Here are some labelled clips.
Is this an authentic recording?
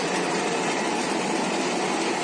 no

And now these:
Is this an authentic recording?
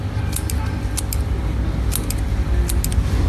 yes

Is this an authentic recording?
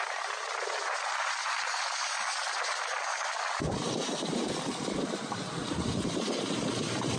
no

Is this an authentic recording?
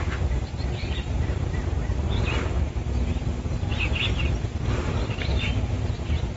yes